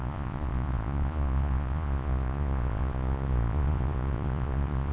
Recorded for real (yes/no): no